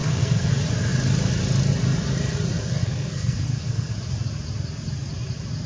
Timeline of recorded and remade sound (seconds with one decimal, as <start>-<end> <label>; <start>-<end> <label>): 0.0-0.5 remade; 0.5-2.8 recorded; 2.8-3.9 remade; 3.9-5.7 recorded